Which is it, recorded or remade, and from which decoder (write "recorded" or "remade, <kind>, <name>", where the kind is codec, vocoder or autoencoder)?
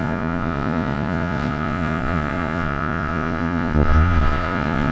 remade, vocoder, Vocos